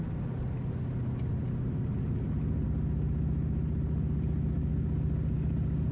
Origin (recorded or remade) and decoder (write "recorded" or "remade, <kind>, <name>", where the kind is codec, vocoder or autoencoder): recorded